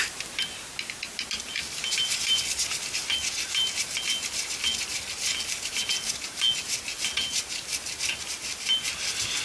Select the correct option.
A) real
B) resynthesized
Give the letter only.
A